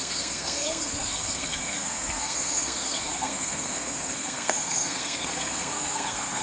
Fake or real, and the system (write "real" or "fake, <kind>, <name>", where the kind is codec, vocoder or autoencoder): fake, codec, SNAC